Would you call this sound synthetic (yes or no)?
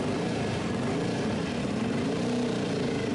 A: yes